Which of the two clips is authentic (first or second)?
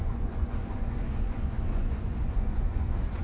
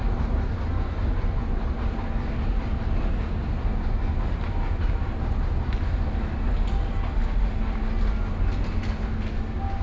second